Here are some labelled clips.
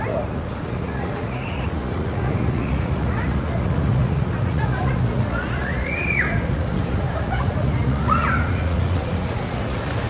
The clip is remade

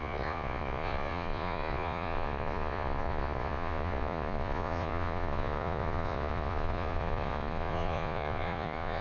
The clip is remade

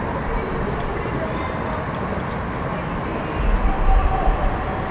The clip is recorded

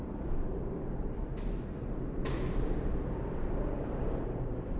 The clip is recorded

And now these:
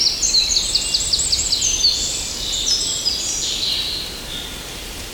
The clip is recorded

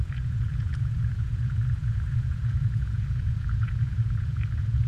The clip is remade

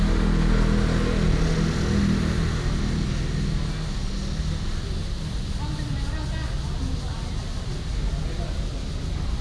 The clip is recorded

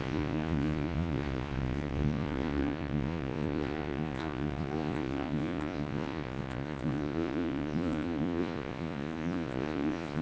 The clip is remade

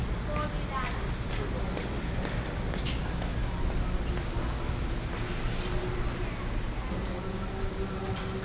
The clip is recorded